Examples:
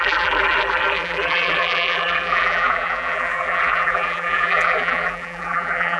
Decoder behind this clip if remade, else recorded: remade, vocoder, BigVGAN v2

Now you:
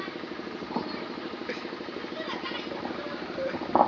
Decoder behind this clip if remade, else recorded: recorded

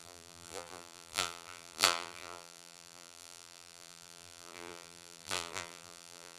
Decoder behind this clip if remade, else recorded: remade, vocoder, BigVGAN v2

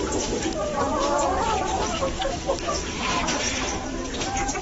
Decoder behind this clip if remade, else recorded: remade, vocoder, BigVGAN v2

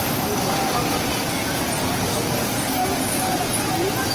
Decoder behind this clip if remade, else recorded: recorded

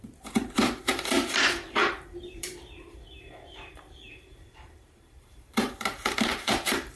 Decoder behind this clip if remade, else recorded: remade, vocoder, BigVGAN v2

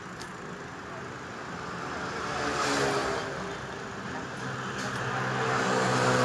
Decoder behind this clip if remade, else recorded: recorded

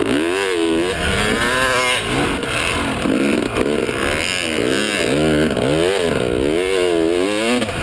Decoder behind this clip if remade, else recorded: recorded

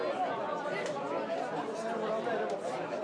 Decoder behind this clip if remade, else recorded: recorded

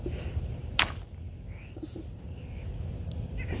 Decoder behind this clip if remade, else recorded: recorded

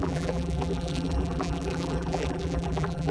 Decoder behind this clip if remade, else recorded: remade, vocoder, BigVGAN v2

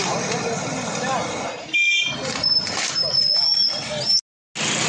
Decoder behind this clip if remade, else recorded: recorded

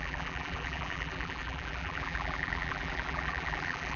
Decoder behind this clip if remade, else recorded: remade, vocoder, BigVGAN v2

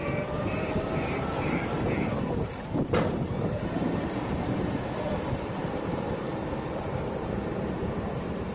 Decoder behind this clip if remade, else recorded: remade, vocoder, BigVGAN v2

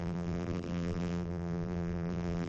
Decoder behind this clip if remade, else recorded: remade, vocoder, BigVGAN v2